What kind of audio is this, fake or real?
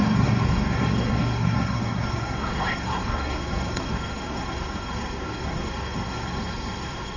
fake